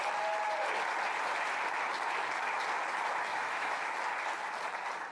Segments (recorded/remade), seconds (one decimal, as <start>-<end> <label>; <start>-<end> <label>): 0.0-3.3 recorded; 3.3-4.0 remade; 4.0-5.1 recorded